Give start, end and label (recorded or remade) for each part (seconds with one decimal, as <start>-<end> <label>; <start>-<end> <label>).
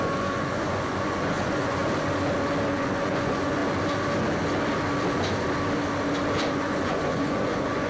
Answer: 0.0-1.8 remade; 1.8-2.7 recorded; 2.7-3.6 remade; 3.6-6.5 recorded; 6.5-7.9 remade